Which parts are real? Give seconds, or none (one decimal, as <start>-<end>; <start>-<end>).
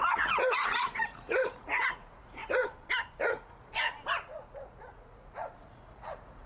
2.6-3.2